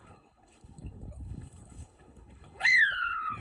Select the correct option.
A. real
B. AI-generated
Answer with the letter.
B